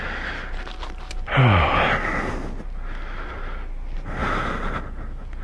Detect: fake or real real